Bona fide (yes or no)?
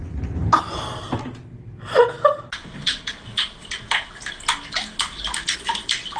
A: yes